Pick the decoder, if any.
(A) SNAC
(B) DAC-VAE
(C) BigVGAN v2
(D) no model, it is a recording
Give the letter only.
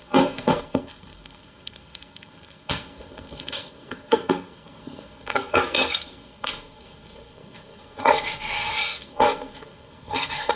A